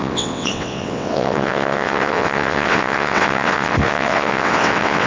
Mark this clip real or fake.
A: fake